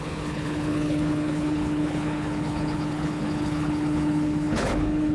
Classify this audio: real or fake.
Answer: fake